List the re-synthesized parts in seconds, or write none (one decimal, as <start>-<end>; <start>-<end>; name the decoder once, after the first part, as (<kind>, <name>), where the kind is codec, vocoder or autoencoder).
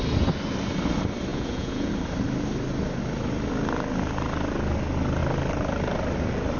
1.3-1.9 (vocoder, Vocos)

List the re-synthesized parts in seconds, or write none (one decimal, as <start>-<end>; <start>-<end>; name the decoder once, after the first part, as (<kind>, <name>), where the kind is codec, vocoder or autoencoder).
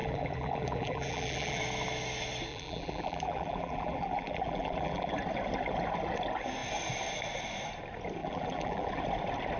0.0-1.6 (vocoder, BigVGAN v2); 2.5-5.1; 8.2-8.9